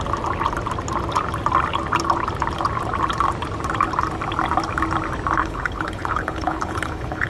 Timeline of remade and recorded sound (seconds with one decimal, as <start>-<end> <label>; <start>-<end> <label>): 0.0-5.4 recorded; 5.4-7.3 remade